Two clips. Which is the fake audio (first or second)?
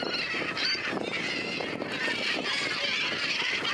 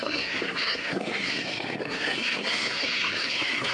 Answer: second